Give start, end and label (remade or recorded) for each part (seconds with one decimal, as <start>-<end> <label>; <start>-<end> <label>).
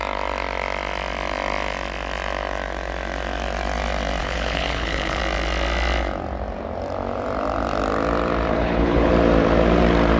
0.0-4.2 recorded; 4.2-5.2 remade; 5.2-8.5 recorded; 8.5-9.1 remade; 9.1-10.2 recorded